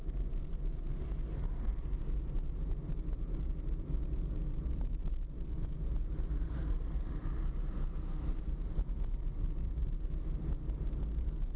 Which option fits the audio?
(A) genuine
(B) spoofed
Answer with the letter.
A